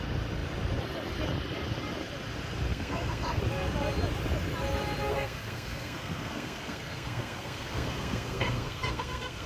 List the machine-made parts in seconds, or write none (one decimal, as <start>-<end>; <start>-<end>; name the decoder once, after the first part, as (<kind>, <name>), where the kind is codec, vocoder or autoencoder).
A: 2.7-3.4 (codec, SNAC); 5.1-9.5